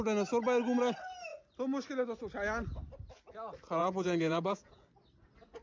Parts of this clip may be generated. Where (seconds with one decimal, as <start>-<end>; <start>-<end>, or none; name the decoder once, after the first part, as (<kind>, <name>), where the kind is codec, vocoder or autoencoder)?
3.8-4.7 (vocoder, Vocos)